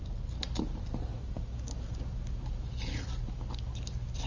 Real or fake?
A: real